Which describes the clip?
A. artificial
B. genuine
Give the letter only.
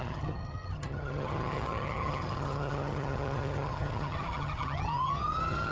A